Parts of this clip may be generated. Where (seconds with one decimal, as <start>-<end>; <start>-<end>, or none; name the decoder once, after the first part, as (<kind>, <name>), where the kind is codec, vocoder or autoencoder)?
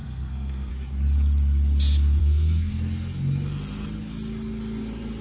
0.0-0.7 (codec, SNAC); 2.2-2.8